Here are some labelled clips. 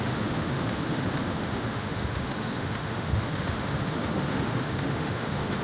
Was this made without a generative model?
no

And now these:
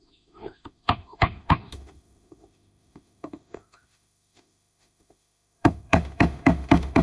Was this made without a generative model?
no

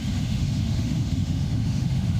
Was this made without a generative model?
no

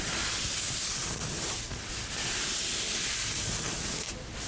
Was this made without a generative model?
yes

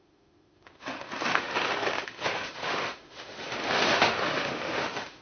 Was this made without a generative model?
no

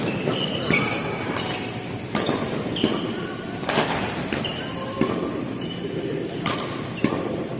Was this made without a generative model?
yes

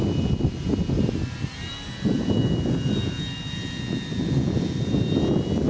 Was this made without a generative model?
yes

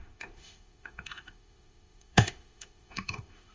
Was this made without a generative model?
no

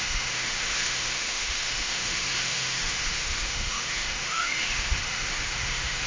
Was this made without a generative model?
no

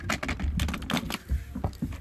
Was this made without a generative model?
yes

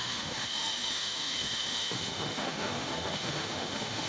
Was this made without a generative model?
no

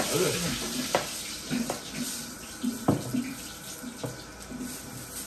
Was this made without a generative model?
yes